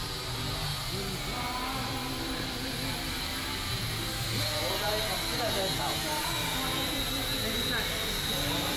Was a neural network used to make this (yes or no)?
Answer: no